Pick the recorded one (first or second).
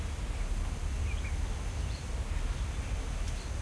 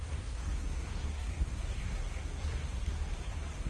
first